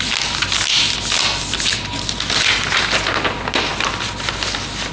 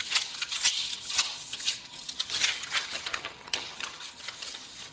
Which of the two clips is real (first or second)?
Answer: first